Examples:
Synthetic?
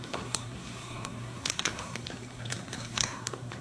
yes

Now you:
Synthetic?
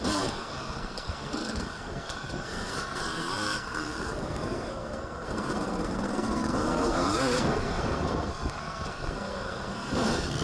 yes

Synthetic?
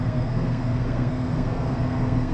yes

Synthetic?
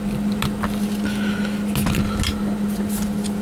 no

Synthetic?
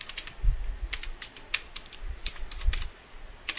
no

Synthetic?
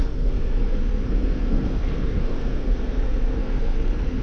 yes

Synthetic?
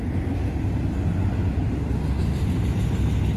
no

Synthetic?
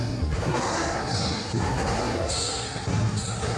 yes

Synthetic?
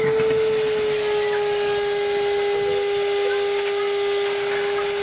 no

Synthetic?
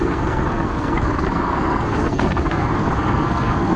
yes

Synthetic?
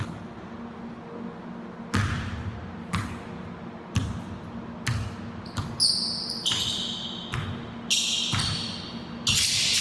no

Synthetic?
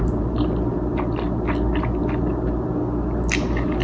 no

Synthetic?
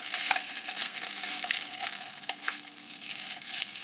yes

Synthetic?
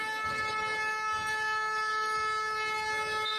no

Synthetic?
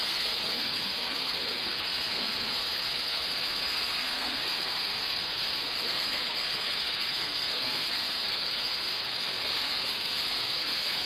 yes